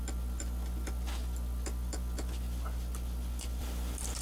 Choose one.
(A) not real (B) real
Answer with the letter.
B